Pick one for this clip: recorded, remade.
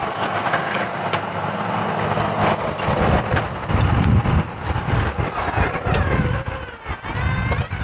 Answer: recorded